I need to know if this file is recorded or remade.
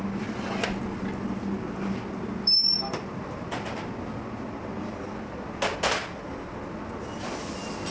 recorded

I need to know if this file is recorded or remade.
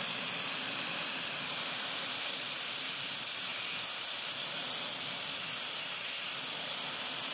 remade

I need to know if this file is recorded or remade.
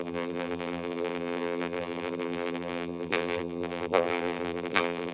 remade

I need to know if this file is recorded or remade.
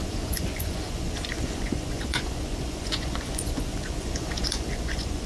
remade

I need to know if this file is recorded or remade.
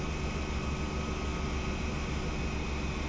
recorded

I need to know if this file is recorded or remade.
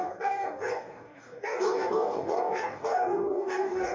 remade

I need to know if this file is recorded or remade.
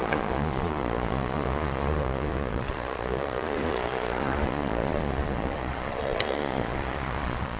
remade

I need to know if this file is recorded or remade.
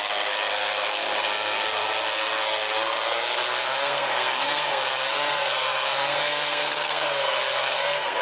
remade